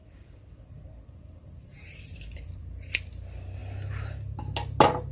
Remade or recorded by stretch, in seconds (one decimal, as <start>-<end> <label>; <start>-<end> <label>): 0.0-3.1 remade; 3.1-5.1 recorded